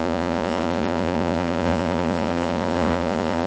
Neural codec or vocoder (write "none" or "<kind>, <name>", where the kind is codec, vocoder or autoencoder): vocoder, Vocos